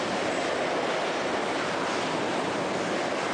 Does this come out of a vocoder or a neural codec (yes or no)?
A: no